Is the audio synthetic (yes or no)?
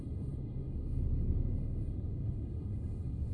yes